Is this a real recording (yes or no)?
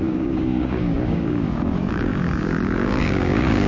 no